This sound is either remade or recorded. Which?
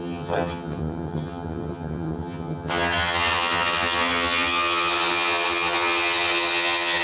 remade